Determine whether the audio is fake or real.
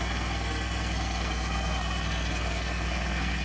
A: fake